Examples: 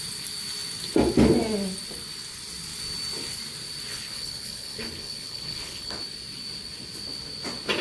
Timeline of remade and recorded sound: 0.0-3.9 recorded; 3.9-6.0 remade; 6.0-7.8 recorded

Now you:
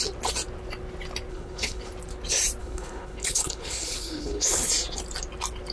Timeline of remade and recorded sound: 0.0-1.3 recorded; 1.3-1.9 remade; 1.9-2.6 recorded; 2.6-4.7 remade; 4.7-5.7 recorded

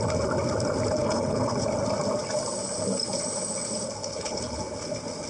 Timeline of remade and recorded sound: 0.0-1.0 recorded; 1.0-1.6 remade; 1.6-4.0 recorded; 4.0-4.6 remade; 4.6-5.3 recorded

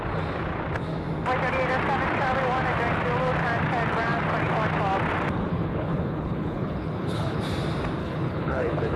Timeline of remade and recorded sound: 0.0-5.5 recorded; 5.5-7.4 remade; 7.4-8.0 recorded; 8.0-9.0 remade

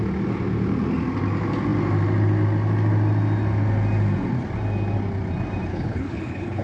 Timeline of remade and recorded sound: 0.0-5.7 recorded; 5.7-6.6 remade

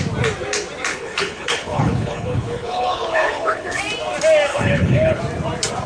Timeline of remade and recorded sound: 0.0-0.9 recorded; 0.9-3.8 remade; 3.8-4.5 recorded; 4.5-5.2 remade; 5.2-5.9 recorded

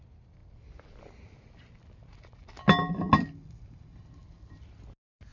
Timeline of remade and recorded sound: 0.0-5.3 recorded